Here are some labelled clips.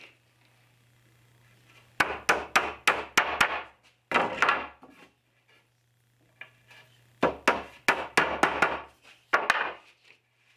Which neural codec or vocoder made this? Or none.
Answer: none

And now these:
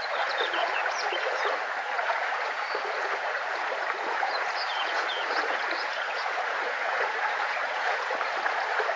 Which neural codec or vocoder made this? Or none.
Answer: vocoder, Vocos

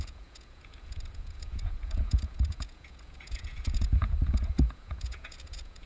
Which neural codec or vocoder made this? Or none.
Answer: vocoder, Vocos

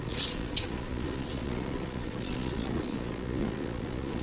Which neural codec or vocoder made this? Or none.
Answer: vocoder, Vocos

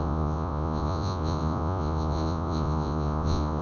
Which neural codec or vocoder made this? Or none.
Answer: vocoder, Vocos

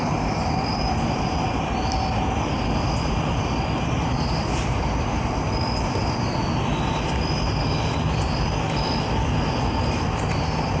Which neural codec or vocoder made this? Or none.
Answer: none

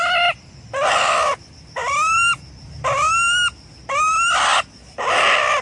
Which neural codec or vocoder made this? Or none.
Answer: none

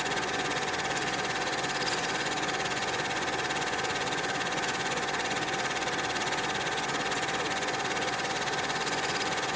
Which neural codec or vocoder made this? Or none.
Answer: vocoder, Vocos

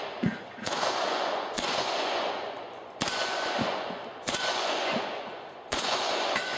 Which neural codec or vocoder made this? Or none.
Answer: vocoder, Vocos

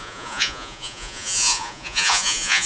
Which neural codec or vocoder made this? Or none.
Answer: vocoder, Vocos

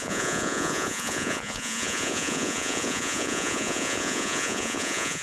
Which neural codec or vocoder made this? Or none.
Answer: vocoder, Vocos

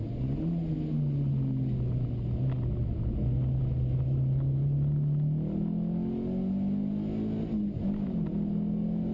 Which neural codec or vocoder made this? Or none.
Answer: none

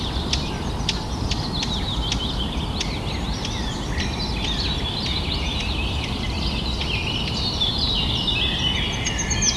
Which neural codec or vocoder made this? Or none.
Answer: none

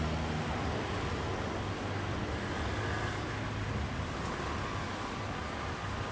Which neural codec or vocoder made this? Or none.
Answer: none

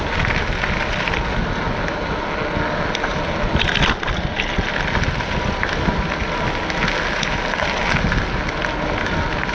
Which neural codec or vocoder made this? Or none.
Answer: none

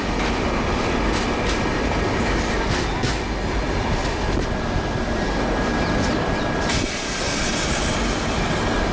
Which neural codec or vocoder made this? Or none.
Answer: none